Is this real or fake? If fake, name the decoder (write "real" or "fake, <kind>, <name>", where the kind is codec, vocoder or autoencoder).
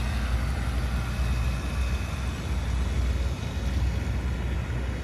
real